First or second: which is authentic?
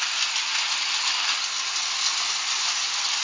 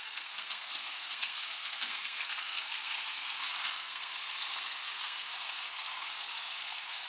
first